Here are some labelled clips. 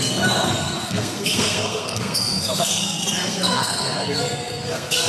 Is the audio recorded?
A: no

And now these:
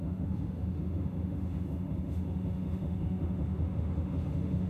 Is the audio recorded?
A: no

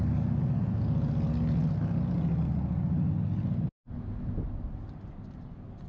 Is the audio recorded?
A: yes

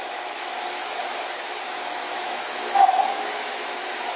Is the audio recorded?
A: no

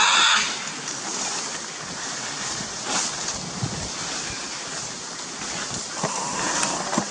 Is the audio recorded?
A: yes